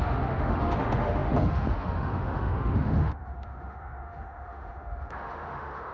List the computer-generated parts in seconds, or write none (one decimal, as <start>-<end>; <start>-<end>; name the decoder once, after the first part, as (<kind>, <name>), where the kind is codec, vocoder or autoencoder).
0.0-5.9 (autoencoder, DAC-VAE)

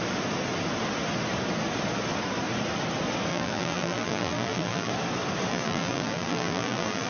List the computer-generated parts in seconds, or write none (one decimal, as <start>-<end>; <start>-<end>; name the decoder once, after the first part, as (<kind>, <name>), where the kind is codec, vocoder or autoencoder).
3.3-4.9 (vocoder, BigVGAN v2); 5.5-7.1

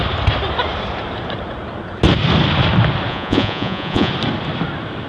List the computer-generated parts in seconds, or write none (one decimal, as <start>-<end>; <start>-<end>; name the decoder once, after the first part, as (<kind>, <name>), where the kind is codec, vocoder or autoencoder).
3.1-4.1 (vocoder, Vocos)

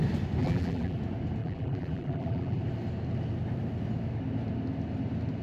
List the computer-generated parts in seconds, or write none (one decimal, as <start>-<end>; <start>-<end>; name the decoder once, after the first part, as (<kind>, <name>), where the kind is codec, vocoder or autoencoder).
0.4-1.0 (vocoder, BigVGAN v2); 1.4-2.6

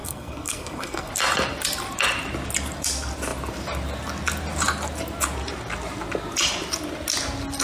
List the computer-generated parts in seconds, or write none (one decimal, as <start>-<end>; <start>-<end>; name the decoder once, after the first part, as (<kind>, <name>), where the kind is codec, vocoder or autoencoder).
0.0-1.1 (codec, SNAC)